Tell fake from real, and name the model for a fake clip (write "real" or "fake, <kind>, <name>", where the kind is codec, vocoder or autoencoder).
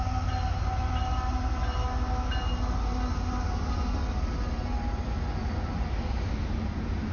real